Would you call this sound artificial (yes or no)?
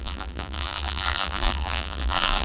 yes